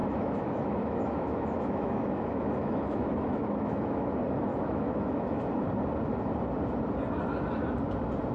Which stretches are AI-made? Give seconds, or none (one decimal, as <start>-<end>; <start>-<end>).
0.0-4.1; 4.5-5.4